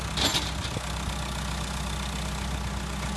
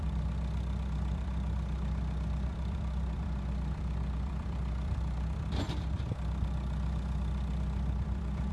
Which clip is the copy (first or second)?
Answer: second